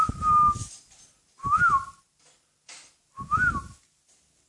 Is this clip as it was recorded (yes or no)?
yes